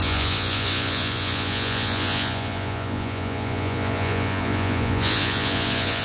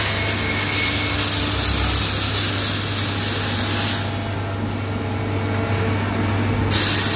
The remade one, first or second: first